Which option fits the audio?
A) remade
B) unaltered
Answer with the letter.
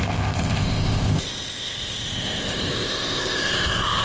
A